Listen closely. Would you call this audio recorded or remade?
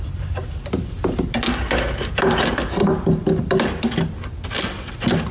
recorded